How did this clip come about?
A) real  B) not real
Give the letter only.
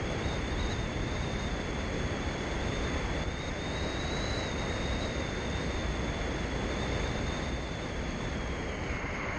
A